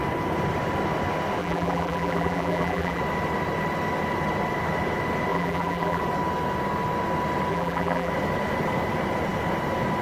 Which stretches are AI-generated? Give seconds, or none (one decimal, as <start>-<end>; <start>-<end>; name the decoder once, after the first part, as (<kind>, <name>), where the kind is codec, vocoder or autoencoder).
1.4-3.0 (vocoder, BigVGAN v2); 5.3-6.0; 7.5-8.1